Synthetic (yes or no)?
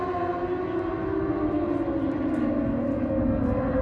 no